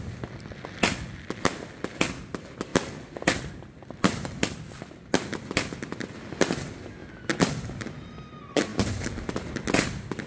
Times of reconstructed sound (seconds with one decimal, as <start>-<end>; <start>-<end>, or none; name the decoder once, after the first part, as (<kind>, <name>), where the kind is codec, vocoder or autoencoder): none